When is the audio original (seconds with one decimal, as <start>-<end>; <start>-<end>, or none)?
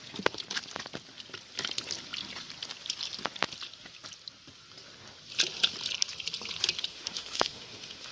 0.0-6.9